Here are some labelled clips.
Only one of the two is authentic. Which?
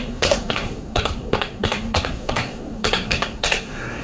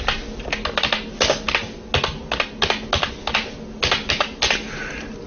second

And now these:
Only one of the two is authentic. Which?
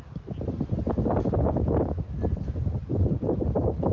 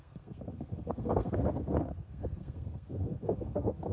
first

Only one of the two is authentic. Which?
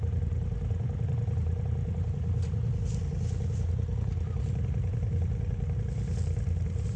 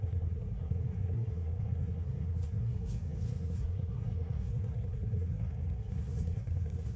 first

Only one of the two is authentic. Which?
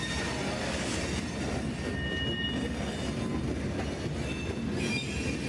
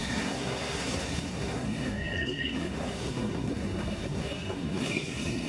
first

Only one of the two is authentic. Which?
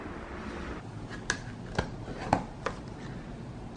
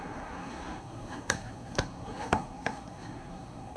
first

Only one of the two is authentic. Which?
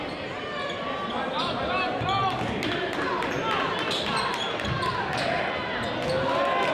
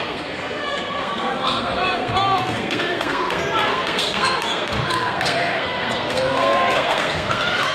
first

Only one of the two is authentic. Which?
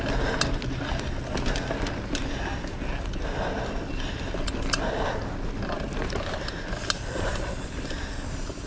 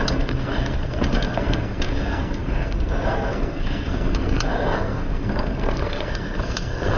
first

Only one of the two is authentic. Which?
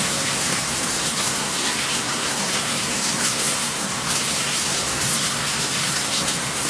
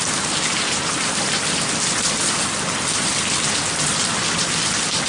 second